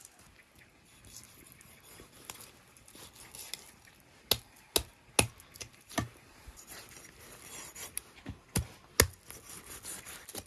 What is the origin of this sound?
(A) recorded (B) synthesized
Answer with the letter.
A